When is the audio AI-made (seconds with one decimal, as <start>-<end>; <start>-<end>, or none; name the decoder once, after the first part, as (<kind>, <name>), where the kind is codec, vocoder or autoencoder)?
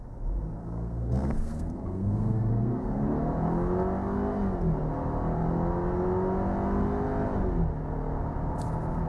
0.6-3.0 (codec, SNAC)